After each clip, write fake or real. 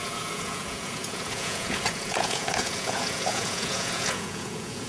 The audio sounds fake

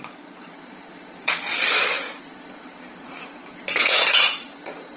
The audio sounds fake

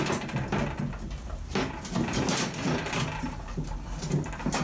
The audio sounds real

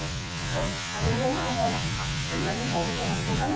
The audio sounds fake